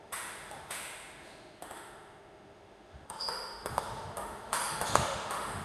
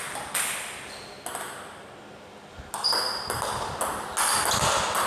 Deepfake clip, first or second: first